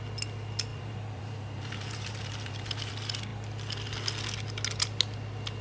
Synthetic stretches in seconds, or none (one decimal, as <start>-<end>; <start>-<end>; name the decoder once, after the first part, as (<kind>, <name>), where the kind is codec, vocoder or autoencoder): 0.7-2.9 (vocoder, BigVGAN v2)